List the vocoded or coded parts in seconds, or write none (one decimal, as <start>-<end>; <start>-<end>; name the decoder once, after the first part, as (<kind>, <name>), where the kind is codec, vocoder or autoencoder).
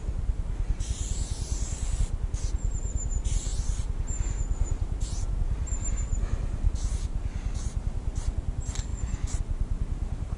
none